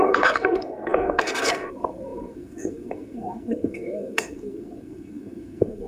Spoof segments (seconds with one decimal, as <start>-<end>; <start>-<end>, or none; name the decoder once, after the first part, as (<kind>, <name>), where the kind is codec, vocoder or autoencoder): 0.0-5.9 (codec, SNAC)